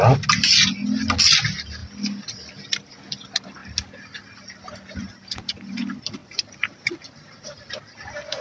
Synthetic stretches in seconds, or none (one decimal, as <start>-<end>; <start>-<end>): 6.2-7.7